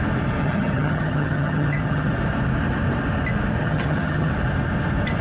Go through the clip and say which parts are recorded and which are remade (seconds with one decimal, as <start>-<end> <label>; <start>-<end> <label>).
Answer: 0.0-0.4 recorded; 0.4-2.1 remade; 2.1-3.6 recorded; 3.6-4.3 remade; 4.3-5.2 recorded

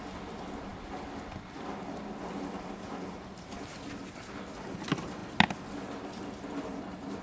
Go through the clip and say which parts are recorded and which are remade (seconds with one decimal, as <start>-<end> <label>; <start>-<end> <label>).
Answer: 0.0-7.2 recorded